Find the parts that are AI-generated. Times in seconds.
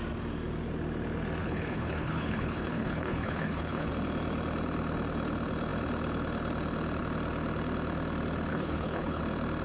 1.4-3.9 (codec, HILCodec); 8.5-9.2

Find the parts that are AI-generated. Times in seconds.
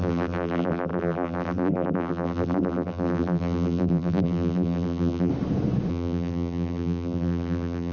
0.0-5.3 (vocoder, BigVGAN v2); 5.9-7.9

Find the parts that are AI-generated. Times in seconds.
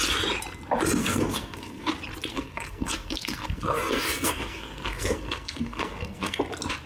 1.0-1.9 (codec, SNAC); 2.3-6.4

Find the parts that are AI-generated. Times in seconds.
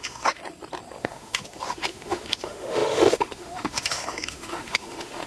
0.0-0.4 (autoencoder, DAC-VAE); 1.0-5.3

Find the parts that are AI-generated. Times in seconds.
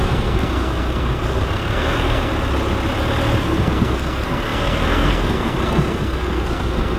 0.0-2.3 (codec, SNAC); 3.4-7.0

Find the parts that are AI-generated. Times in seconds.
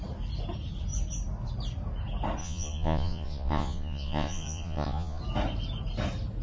2.4-5.2 (vocoder, Vocos)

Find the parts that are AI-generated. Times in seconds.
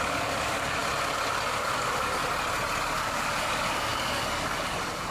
0.0-0.8 (codec, DAC); 1.5-2.2; 2.8-5.1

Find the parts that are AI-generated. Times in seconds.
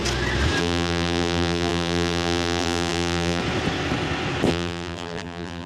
0.6-3.4 (vocoder, BigVGAN v2); 4.5-5.7